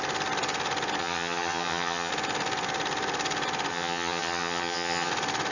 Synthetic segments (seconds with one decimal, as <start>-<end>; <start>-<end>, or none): 1.0-2.1; 3.7-5.1